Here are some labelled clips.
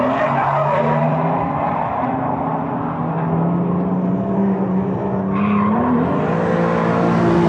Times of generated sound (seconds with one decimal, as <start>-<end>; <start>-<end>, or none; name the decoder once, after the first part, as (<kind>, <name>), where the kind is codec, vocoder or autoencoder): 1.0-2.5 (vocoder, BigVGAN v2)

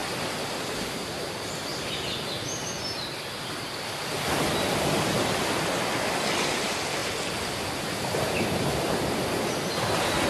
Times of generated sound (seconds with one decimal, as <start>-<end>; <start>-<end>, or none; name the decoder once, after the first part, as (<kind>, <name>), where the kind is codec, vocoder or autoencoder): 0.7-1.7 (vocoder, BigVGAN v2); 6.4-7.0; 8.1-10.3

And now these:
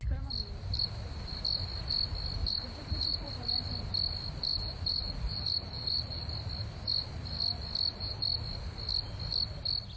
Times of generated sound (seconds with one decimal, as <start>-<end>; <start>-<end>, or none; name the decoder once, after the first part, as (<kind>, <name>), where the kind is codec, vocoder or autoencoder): 2.4-3.3 (vocoder, BigVGAN v2); 4.5-6.3

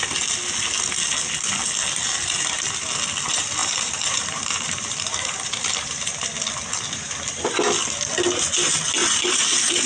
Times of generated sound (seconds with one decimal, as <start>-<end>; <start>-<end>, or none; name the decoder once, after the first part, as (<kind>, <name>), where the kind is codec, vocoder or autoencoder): 3.6-6.1 (vocoder, BigVGAN v2); 9.0-9.9